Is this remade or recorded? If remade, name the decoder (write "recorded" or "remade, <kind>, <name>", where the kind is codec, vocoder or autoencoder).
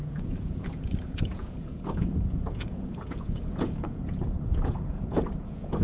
remade, vocoder, Vocos